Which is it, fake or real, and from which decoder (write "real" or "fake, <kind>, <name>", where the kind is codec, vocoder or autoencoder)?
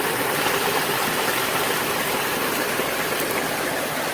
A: real